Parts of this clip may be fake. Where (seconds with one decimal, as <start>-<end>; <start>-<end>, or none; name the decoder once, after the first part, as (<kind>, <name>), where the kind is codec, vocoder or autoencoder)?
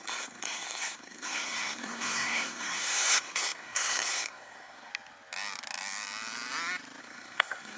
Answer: 0.0-4.9 (codec, SNAC); 7.0-7.8